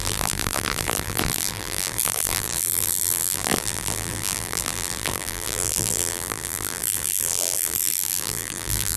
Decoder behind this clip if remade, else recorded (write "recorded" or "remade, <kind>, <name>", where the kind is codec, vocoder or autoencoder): remade, vocoder, BigVGAN v2